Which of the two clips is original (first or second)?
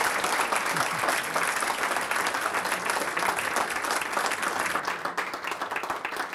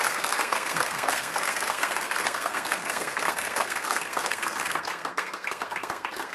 first